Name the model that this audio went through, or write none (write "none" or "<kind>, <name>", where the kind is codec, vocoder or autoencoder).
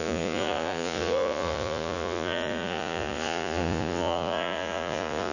vocoder, Vocos